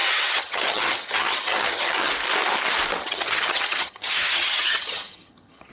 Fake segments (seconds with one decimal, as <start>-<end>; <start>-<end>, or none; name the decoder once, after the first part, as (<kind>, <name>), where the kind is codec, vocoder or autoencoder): 0.0-2.1 (vocoder, HiFi-GAN); 3.0-5.7